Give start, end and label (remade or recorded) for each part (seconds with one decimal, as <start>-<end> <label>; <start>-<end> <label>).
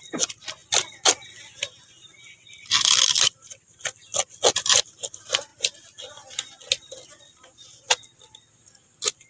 0.0-9.3 recorded